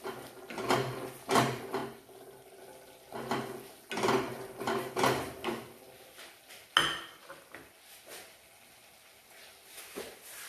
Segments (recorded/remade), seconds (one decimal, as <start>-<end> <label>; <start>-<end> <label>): 0.0-10.5 recorded

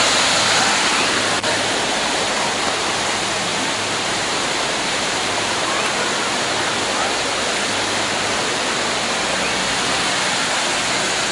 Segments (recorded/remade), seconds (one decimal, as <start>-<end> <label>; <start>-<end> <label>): 0.0-3.5 recorded; 3.5-5.7 remade; 5.7-11.3 recorded

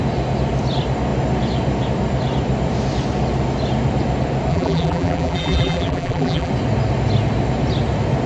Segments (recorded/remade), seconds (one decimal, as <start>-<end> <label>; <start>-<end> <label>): 0.0-4.5 recorded; 4.5-6.5 remade; 6.5-8.3 recorded

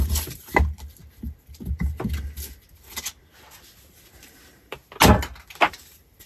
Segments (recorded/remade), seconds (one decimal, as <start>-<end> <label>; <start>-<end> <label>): 0.0-0.5 remade; 0.5-4.2 recorded; 4.2-4.8 remade; 4.8-5.7 recorded; 5.7-6.3 remade